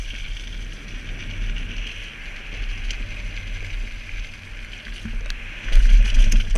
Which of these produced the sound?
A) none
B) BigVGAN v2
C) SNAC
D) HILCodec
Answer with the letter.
A